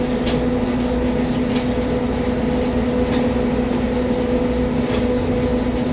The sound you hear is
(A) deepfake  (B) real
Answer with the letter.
B